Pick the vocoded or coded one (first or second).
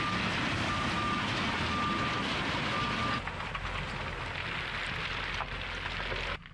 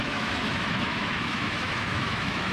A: second